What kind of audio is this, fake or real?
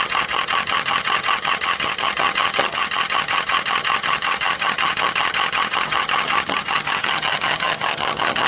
fake